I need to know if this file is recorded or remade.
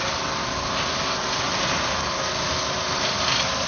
recorded